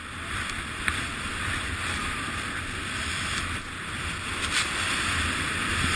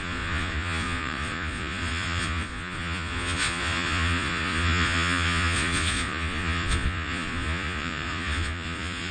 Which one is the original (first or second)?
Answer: first